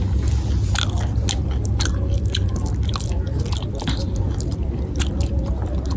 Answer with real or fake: real